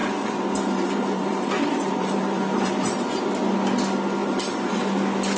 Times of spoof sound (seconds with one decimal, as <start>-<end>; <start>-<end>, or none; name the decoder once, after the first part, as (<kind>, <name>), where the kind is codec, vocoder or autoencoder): 0.0-3.2 (vocoder, BigVGAN v2); 4.2-4.8